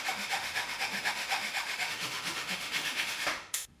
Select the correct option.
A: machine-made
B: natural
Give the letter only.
A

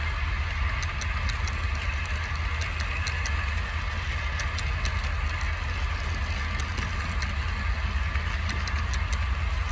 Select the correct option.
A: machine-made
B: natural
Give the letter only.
B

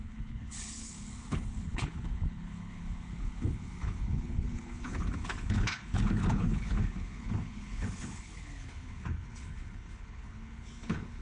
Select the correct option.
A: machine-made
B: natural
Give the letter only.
A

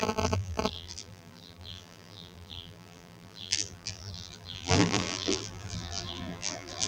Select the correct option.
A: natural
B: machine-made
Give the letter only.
B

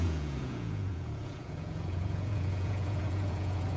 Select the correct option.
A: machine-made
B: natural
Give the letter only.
A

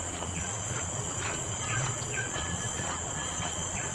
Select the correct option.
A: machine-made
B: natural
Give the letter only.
A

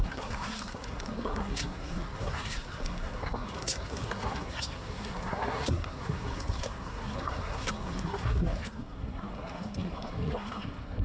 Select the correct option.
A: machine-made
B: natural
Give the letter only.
A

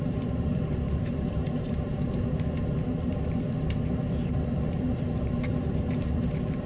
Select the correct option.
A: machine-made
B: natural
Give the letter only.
A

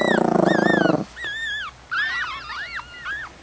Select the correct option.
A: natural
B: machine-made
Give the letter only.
A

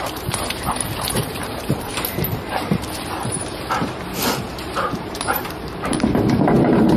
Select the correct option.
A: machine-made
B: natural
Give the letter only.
A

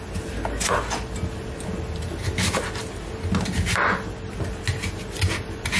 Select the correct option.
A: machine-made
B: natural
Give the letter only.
B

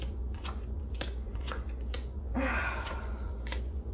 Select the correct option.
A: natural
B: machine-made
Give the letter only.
B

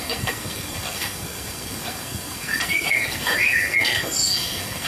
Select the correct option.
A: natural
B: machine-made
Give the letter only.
B